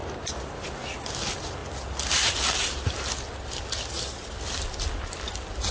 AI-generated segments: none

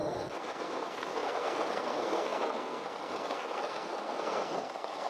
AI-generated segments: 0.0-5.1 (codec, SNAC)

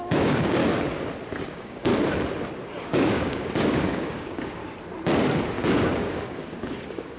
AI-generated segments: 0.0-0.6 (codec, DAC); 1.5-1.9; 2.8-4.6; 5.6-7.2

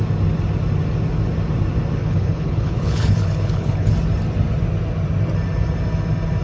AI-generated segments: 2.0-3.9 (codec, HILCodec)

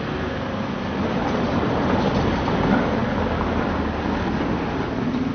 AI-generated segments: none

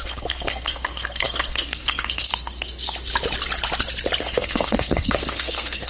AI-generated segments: 0.0-2.3 (codec, SNAC); 4.2-5.9

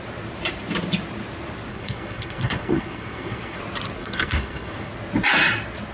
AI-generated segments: 1.7-3.6 (codec, SNAC); 4.0-4.9

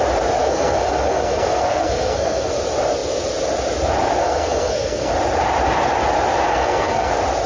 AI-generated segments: 0.4-2.5 (codec, SNAC); 4.2-5.1; 6.5-7.1